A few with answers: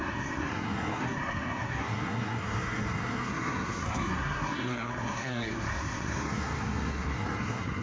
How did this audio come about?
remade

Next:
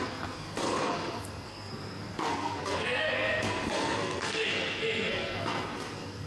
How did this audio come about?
remade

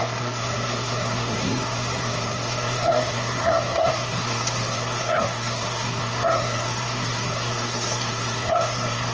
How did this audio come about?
remade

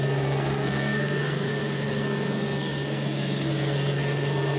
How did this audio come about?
remade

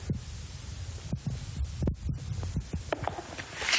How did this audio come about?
recorded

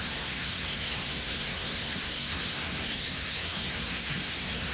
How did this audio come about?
remade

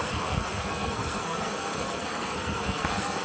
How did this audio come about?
remade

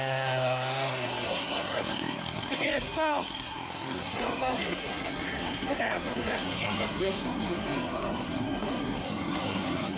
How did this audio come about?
remade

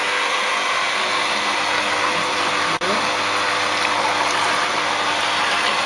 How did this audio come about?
recorded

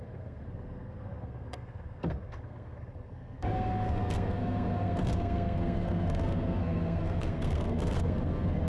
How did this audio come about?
remade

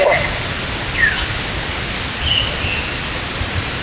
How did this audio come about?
recorded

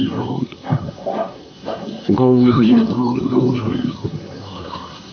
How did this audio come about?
remade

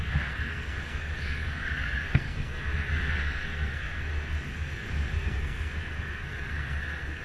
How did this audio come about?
remade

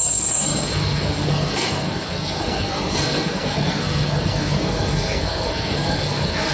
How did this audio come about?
remade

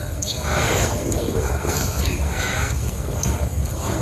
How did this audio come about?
remade